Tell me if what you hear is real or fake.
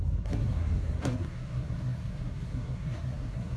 fake